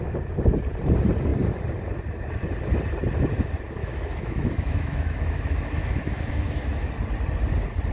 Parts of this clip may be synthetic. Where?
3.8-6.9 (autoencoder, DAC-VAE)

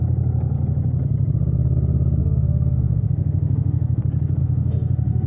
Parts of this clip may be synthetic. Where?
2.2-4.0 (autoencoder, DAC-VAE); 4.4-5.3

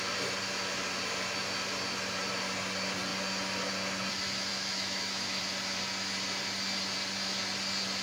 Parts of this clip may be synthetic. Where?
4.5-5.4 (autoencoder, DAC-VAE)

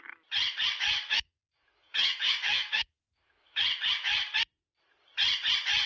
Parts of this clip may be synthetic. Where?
1.1-3.6 (autoencoder, DAC-VAE)

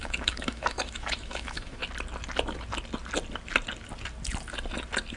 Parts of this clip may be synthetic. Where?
0.0-1.8 (autoencoder, DAC-VAE)

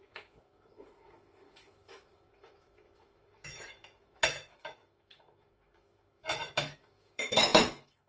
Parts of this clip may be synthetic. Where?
0.0-8.1 (autoencoder, DAC-VAE)

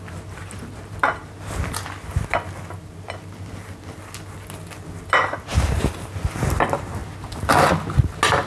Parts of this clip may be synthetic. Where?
none